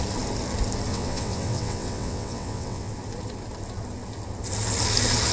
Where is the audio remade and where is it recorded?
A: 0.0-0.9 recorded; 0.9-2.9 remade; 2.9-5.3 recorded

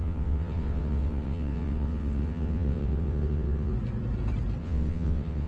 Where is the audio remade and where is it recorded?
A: 0.0-3.7 remade; 3.7-4.6 recorded; 4.6-5.5 remade

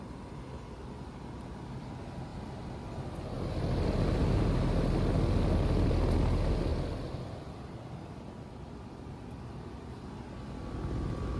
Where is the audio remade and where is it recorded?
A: 0.0-11.4 recorded

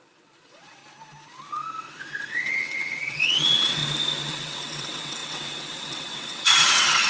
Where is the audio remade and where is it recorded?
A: 0.0-0.8 remade; 0.8-1.8 recorded; 1.8-3.8 remade; 3.8-4.3 recorded; 4.3-7.1 remade

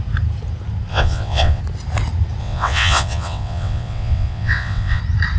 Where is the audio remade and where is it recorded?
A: 0.0-0.9 recorded; 0.9-1.6 remade; 1.6-2.4 recorded; 2.4-5.0 remade; 5.0-5.4 recorded

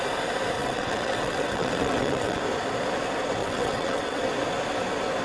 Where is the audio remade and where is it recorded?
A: 0.0-0.6 recorded; 0.6-2.4 remade; 2.4-3.4 recorded; 3.4-4.2 remade; 4.2-5.2 recorded